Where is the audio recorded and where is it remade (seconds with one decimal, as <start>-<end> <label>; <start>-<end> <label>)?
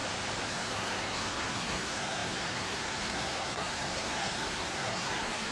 0.0-0.5 recorded; 0.5-5.5 remade